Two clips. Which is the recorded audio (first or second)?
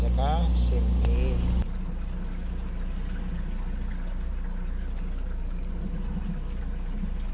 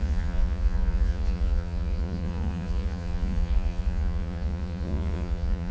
first